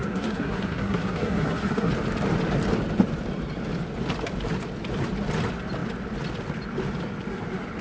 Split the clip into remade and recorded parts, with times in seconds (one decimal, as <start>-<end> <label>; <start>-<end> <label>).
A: 0.0-1.9 remade; 1.9-7.8 recorded